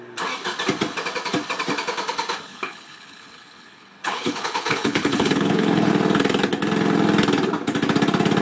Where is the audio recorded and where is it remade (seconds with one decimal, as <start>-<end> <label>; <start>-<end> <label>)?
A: 0.0-2.5 recorded; 2.5-5.9 remade; 5.9-8.4 recorded